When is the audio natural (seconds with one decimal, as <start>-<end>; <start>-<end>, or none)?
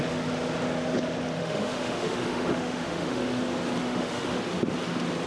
0.0-1.4; 3.4-3.8; 4.4-5.3